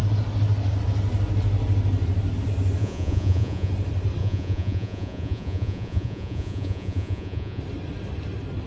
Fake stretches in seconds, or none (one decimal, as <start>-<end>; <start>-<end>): 2.8-3.7; 4.2-7.6